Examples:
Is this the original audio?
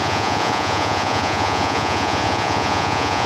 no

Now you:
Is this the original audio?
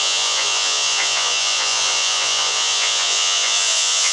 no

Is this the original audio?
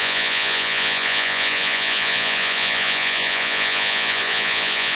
no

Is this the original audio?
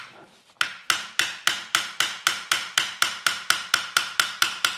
yes